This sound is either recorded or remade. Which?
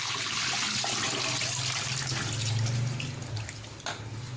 recorded